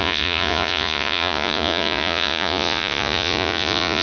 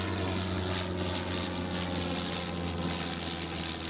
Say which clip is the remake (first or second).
first